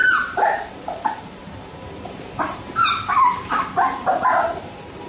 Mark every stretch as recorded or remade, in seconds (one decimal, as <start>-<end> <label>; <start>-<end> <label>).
0.0-3.5 remade; 3.5-4.2 recorded; 4.2-5.1 remade